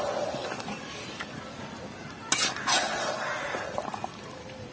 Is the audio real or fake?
real